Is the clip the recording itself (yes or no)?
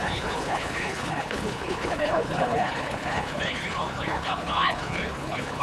no